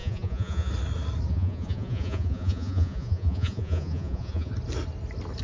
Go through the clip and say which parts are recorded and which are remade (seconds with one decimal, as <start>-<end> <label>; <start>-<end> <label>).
0.0-0.7 remade; 0.7-1.3 recorded; 1.3-4.5 remade; 4.5-5.4 recorded